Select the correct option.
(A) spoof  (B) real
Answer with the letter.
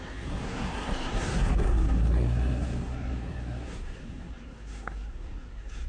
A